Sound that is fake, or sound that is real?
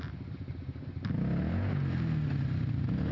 real